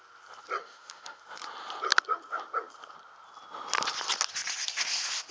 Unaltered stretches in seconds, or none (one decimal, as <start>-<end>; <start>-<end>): 0.0-0.6; 1.2-5.3

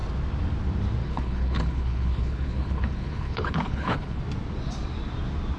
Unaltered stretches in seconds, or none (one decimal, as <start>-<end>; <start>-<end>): 0.0-1.0; 4.2-5.6

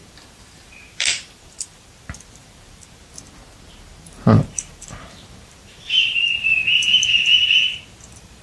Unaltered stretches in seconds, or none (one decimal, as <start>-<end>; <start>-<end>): 3.1-3.9

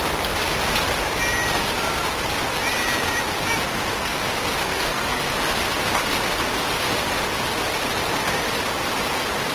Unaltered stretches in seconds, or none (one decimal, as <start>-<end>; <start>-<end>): 0.0-4.6; 5.2-9.5

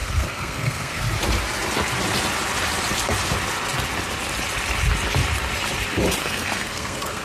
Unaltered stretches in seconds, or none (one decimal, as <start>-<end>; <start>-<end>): 1.0-6.2

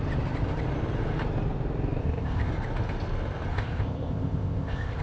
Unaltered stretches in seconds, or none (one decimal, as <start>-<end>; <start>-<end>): 0.0-2.0; 2.5-3.5